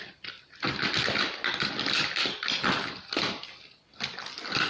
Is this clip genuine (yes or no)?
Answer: yes